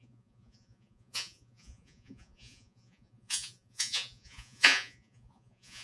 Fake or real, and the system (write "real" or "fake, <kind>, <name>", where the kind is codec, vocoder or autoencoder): fake, vocoder, Vocos